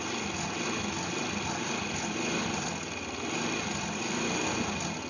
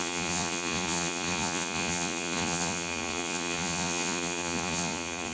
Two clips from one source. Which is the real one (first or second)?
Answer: first